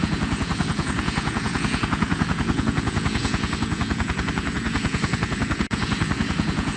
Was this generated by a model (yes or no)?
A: yes